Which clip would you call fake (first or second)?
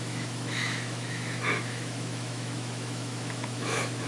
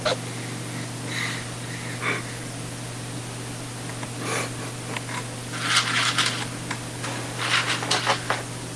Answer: first